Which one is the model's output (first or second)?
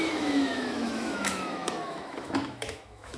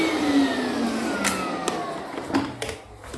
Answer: first